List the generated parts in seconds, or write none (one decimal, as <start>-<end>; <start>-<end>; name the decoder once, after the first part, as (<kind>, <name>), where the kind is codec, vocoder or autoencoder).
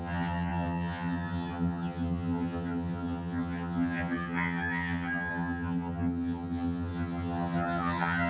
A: 0.0-8.3 (vocoder, HiFi-GAN)